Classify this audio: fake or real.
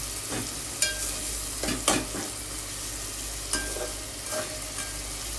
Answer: real